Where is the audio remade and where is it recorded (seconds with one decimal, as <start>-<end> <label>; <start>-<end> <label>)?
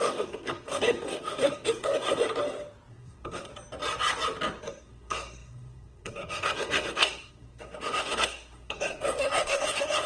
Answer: 0.0-2.2 remade; 2.2-2.9 recorded; 2.9-3.5 remade; 3.5-4.6 recorded; 4.6-10.1 remade